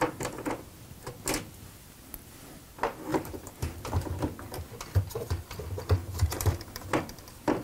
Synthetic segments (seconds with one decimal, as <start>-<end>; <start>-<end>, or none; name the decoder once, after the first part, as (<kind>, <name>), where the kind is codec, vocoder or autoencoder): 3.1-4.1 (vocoder, BigVGAN v2); 6.0-7.0